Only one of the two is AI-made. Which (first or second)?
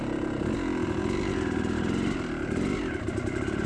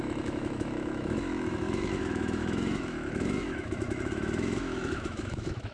second